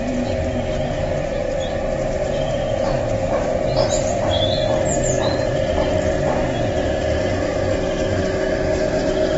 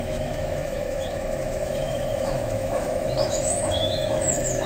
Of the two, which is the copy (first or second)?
second